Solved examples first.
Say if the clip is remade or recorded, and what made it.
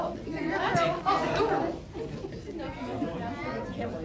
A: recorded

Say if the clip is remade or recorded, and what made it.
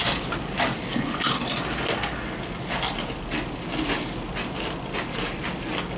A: recorded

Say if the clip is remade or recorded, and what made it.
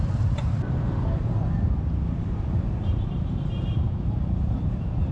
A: remade, vocoder, BigVGAN v2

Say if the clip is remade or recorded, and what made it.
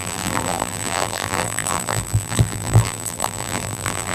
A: remade, vocoder, BigVGAN v2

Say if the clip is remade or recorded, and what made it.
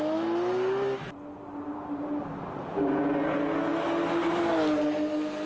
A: recorded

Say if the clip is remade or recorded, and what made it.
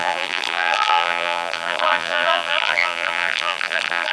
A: remade, vocoder, BigVGAN v2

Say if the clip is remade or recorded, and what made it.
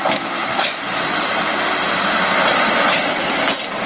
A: recorded